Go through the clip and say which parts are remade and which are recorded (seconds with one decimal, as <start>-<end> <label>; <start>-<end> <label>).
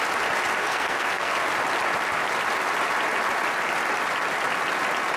0.0-0.6 recorded; 0.6-1.5 remade; 1.5-5.2 recorded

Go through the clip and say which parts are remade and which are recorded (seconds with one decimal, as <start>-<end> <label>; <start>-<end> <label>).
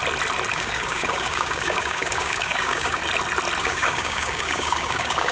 0.0-0.5 recorded; 0.5-3.0 remade; 3.0-3.6 recorded; 3.6-5.3 remade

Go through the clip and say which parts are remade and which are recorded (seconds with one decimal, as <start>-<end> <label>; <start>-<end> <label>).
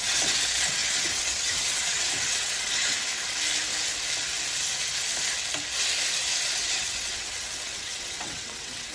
0.0-3.1 remade; 3.1-6.4 recorded; 6.4-8.9 remade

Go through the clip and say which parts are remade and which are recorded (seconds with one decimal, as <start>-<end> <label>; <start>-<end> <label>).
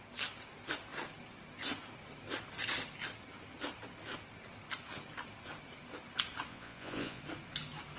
0.0-6.5 recorded; 6.5-7.2 remade; 7.2-8.0 recorded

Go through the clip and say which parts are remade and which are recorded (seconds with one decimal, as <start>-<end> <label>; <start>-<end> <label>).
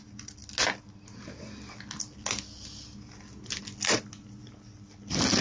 0.0-5.4 recorded